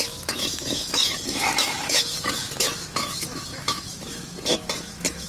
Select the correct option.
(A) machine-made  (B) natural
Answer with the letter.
A